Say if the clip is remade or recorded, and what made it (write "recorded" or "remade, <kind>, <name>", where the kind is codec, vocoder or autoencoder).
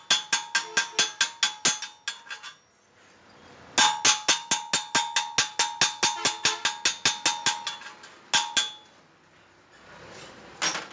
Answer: recorded